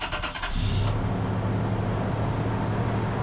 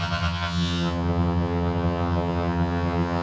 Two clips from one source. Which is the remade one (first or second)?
second